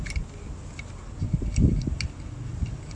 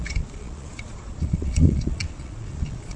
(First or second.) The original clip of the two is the first